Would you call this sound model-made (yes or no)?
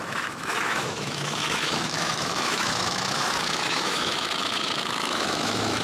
yes